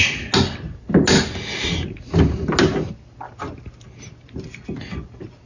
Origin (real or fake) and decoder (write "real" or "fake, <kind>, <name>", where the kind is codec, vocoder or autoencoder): real